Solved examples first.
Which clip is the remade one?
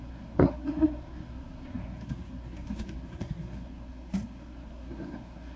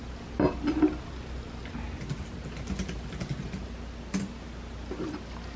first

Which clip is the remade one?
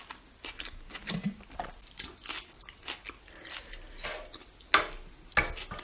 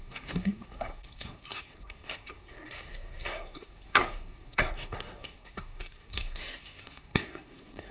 second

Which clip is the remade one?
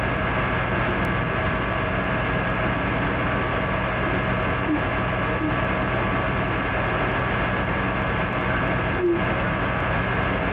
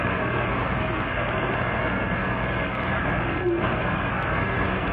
second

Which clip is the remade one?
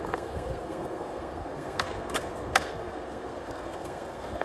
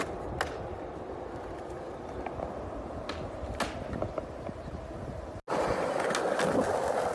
first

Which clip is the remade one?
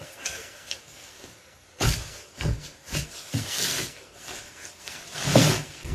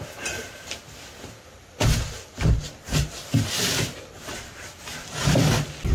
first